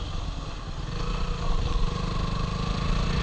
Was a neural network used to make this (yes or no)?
no